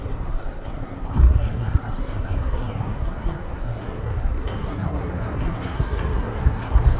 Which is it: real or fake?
fake